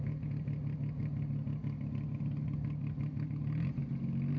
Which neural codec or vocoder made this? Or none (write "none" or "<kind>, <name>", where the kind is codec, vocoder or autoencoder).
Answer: none